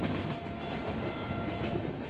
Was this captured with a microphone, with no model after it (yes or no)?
yes